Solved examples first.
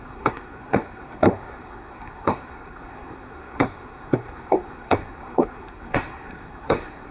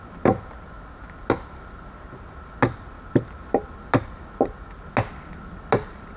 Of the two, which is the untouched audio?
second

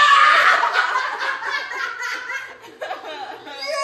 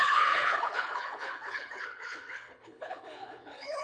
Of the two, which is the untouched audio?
first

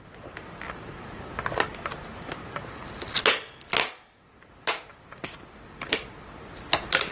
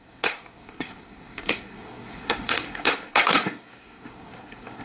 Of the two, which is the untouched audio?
first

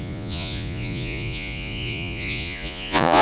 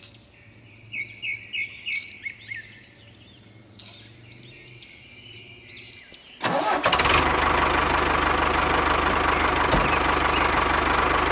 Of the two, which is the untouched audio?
second